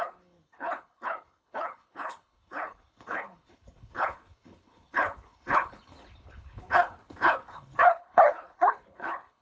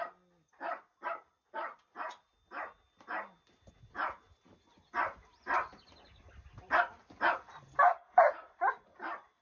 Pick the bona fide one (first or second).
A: second